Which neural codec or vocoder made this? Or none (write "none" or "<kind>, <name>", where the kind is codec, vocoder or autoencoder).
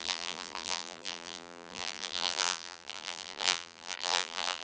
vocoder, BigVGAN v2